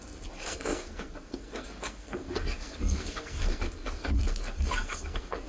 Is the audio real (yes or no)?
no